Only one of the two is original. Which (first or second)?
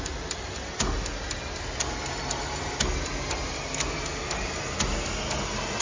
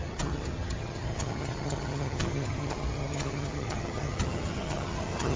first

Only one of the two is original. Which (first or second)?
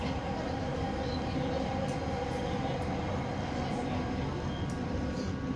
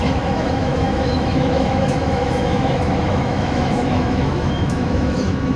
first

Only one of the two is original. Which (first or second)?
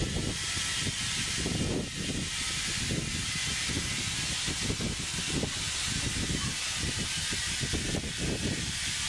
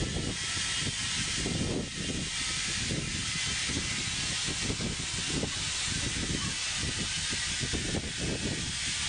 second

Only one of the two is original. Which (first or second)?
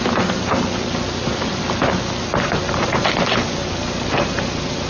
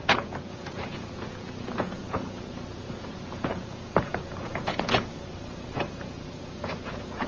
first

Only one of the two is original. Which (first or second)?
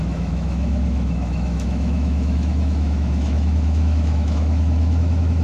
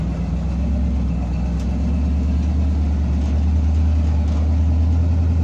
second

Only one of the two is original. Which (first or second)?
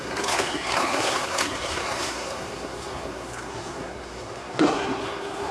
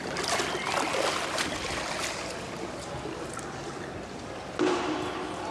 second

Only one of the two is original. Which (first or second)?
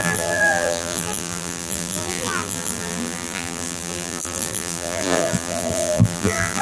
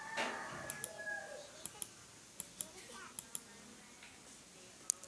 second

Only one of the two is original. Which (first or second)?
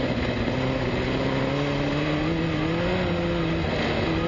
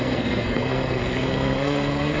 first